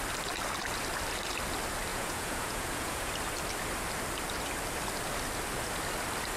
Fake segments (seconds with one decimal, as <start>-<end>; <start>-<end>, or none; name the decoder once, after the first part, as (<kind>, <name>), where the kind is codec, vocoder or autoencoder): 1.9-3.1 (vocoder, Vocos)